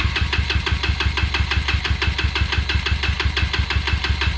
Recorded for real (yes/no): yes